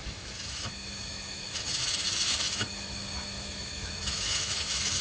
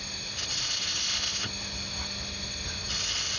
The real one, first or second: second